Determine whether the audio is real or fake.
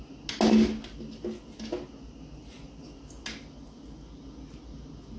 real